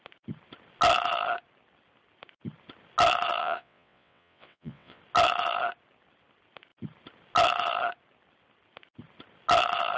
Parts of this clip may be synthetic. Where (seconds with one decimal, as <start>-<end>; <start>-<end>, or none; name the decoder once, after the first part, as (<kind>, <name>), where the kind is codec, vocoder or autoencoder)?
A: 3.4-5.0 (vocoder, WaveNeXt)